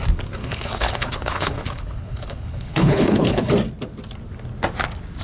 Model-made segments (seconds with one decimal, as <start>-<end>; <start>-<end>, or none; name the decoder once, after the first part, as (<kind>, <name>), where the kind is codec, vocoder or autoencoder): 0.4-3.5 (codec, HILCodec)

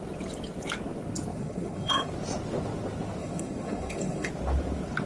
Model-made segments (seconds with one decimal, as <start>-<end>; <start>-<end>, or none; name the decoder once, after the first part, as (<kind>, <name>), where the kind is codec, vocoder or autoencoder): 1.3-2.1 (codec, HILCodec); 3.2-4.3

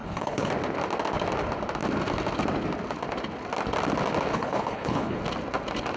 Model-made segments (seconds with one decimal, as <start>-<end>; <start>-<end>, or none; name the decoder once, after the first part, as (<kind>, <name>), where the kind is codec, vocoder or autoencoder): 0.0-0.5 (codec, HILCodec); 4.3-5.2

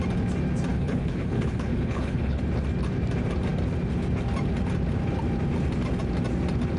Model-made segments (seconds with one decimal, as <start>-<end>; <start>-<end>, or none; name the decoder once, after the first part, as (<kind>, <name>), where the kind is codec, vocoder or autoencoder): 0.7-2.4 (codec, HILCodec)

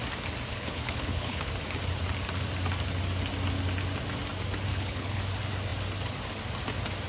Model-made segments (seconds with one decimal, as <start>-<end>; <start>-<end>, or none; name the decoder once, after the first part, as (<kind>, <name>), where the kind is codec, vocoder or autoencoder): 0.5-1.5 (codec, HILCodec); 4.7-5.2

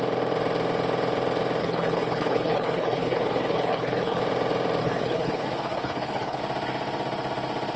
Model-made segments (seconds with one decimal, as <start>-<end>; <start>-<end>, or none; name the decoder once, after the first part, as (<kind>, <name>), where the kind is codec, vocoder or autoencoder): 1.6-4.2 (codec, HILCodec); 4.8-6.4